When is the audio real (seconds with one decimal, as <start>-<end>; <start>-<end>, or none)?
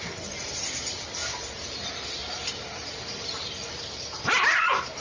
0.0-1.2; 3.8-5.0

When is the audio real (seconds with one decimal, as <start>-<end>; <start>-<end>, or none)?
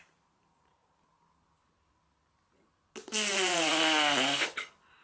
0.8-3.3; 3.7-5.0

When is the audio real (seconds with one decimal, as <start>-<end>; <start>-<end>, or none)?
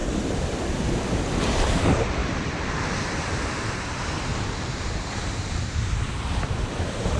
1.2-2.2; 3.5-4.3; 6.8-7.2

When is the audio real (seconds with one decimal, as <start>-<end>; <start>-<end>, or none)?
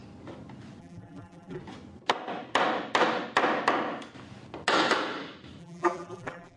0.0-0.8; 1.6-5.6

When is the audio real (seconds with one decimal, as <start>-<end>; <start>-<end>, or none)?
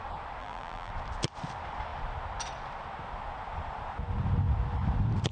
0.0-0.4; 0.9-5.3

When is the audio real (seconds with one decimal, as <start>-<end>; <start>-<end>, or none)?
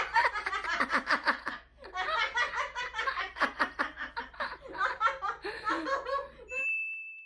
none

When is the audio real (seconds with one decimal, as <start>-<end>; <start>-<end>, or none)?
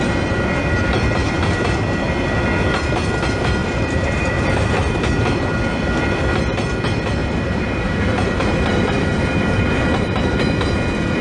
0.0-3.6; 4.7-7.2; 10.4-11.2